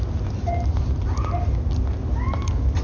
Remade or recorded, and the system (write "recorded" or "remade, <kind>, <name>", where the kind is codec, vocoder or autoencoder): recorded